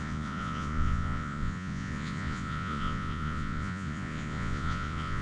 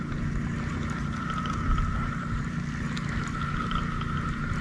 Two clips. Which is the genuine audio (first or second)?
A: second